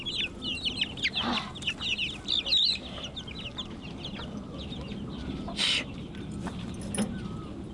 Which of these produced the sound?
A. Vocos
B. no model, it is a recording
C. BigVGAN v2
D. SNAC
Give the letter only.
B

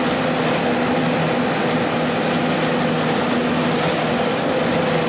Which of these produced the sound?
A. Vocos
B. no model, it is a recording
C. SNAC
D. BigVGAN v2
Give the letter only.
B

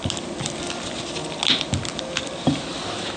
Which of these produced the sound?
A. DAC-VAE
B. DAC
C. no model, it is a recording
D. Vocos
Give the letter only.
C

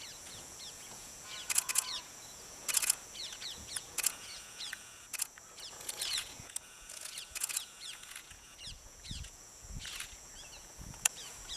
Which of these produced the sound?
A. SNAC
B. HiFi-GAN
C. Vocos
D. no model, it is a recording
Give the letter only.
C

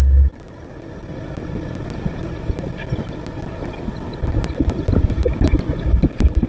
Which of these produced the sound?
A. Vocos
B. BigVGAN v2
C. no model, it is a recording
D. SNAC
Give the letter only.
C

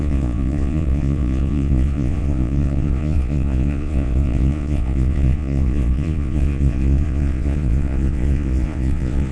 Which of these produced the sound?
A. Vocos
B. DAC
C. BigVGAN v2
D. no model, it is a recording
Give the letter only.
A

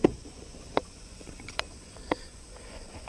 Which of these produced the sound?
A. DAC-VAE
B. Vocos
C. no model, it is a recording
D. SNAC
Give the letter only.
B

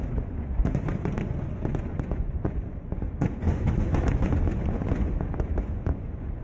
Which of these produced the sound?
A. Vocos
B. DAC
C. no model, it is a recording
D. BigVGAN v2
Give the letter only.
A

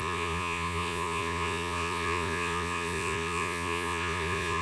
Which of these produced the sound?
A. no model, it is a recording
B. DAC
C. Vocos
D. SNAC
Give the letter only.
C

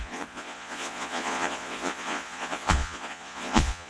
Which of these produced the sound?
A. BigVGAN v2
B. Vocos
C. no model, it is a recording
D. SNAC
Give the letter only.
B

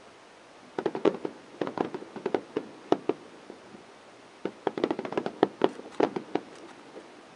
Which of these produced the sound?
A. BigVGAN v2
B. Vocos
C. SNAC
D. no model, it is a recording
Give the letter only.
B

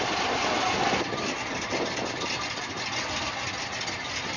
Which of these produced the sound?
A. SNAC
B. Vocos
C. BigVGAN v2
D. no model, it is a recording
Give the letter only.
D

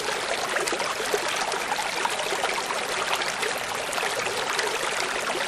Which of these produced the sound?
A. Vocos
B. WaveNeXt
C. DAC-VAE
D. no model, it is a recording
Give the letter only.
D